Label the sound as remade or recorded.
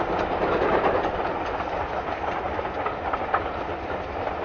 recorded